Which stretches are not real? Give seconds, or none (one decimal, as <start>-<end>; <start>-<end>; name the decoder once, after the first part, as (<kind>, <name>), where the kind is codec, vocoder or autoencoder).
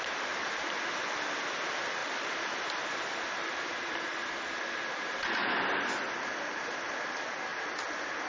2.0-4.3 (vocoder, BigVGAN v2); 5.4-6.6